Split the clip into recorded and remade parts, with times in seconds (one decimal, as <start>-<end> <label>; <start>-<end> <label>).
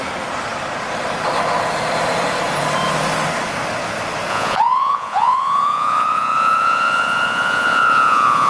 0.0-4.3 recorded; 4.3-8.5 remade